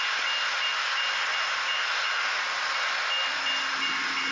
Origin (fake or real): real